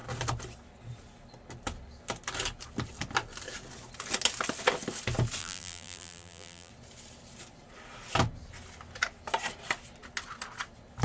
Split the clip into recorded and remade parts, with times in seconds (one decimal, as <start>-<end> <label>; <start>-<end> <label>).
0.0-5.4 recorded; 5.4-6.7 remade; 6.7-11.0 recorded